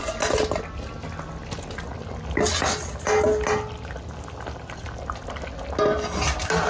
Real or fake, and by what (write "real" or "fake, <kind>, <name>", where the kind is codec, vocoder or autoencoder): real